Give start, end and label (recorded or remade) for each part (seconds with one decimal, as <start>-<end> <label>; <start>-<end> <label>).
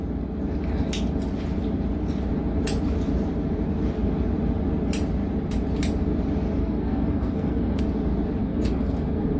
0.0-6.6 recorded; 6.6-7.8 remade; 7.8-8.4 recorded; 8.4-9.4 remade